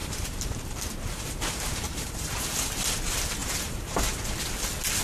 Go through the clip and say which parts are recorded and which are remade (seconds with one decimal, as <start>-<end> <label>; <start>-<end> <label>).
0.0-3.0 remade; 3.0-3.4 recorded; 3.4-4.2 remade; 4.2-5.0 recorded